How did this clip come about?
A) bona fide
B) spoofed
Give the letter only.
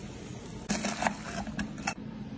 A